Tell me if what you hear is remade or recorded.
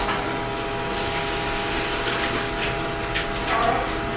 recorded